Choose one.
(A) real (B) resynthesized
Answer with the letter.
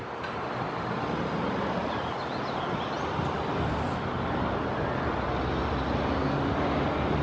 A